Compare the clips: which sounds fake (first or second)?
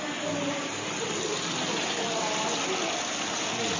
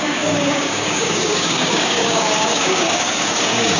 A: second